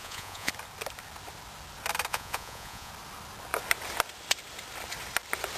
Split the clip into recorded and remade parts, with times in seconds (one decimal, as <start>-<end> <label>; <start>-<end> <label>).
0.0-0.5 remade; 0.5-2.1 recorded; 2.1-2.9 remade; 2.9-5.6 recorded